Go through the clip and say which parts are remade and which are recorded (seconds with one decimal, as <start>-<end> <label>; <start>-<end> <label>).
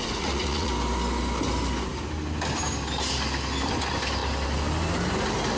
0.0-0.7 remade; 0.7-5.6 recorded